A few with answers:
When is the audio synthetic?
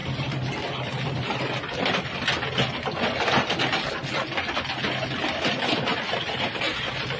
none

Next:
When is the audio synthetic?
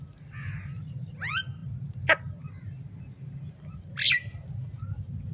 none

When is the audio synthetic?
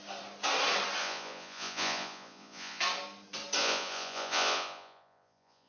1.0-2.8; 3.6-5.7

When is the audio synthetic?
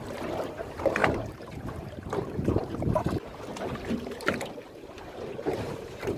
0.0-3.5; 4.5-6.2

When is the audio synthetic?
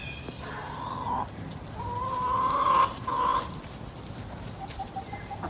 none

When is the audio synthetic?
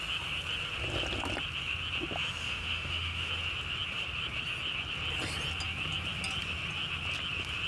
2.4-3.3